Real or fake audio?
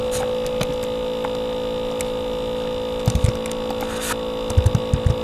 real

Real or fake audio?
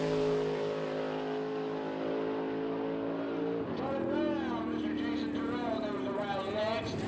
real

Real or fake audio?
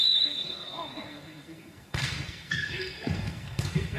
fake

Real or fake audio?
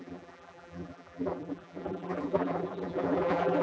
fake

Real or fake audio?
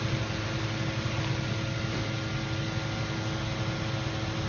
real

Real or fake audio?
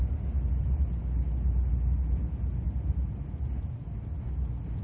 real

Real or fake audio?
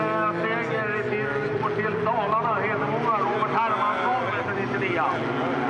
real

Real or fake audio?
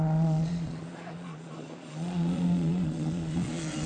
fake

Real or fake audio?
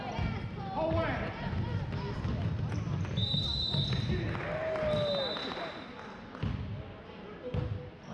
real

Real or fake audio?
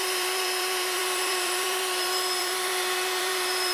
fake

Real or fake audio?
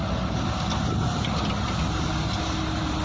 real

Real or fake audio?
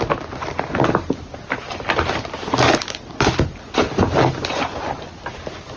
real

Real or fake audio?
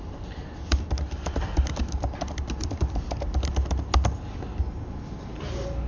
real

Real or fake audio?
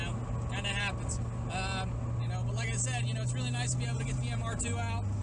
real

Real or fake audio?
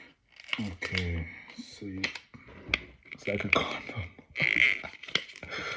real